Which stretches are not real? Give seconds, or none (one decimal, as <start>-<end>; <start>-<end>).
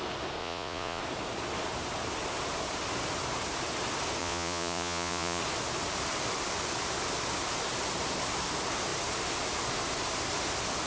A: 0.4-1.0; 4.2-5.4